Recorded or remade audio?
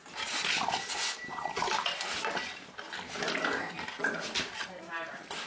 recorded